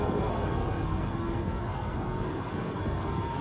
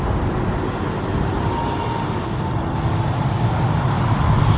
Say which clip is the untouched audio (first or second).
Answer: second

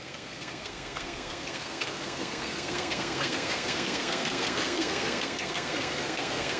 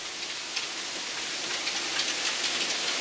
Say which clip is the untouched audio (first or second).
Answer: second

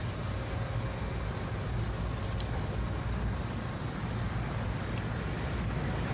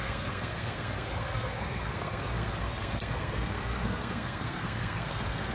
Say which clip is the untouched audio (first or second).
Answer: first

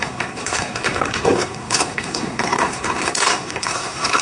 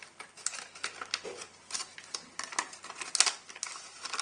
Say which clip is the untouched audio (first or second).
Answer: second